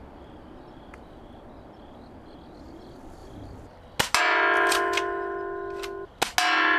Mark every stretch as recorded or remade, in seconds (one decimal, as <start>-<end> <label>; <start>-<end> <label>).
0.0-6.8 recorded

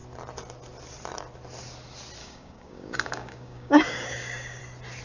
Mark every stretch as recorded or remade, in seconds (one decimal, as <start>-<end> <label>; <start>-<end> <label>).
0.0-2.2 recorded; 2.2-4.6 remade; 4.6-5.0 recorded

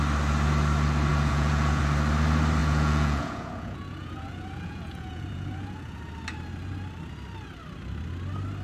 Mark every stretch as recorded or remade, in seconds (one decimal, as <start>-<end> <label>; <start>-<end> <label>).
0.0-1.1 recorded; 1.1-1.8 remade; 1.8-2.6 recorded; 2.6-6.0 remade; 6.0-8.6 recorded